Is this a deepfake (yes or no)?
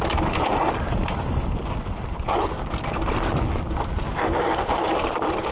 no